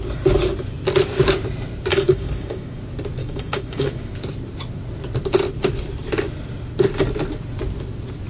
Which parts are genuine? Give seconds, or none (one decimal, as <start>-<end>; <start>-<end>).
0.0-1.9; 2.8-3.2; 4.1-8.3